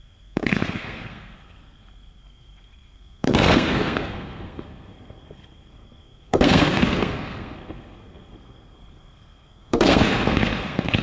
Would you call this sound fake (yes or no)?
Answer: yes